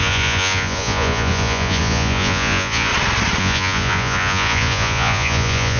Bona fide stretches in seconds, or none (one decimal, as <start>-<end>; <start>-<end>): 2.9-3.4